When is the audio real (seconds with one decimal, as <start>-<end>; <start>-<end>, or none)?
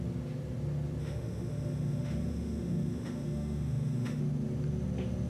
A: 0.0-1.0; 4.2-5.3